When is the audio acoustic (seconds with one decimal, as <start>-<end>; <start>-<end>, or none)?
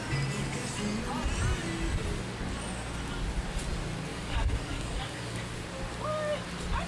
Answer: 0.0-4.1; 5.4-6.9